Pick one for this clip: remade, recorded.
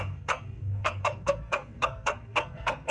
remade